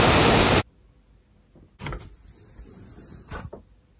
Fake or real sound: real